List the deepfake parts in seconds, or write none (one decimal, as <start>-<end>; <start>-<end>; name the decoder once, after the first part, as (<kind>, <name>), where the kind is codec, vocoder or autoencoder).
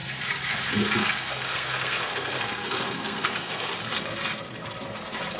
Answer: 1.0-3.7 (codec, SNAC)